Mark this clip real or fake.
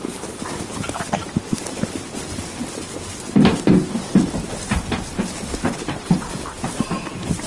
real